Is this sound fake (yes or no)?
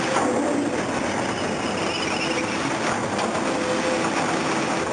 no